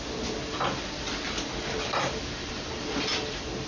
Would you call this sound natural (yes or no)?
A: yes